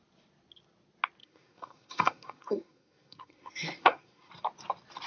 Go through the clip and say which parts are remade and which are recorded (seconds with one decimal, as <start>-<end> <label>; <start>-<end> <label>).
0.0-1.2 recorded; 1.2-4.3 remade; 4.3-5.1 recorded